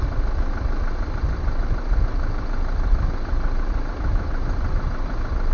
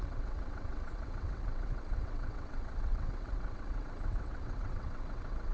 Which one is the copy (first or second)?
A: second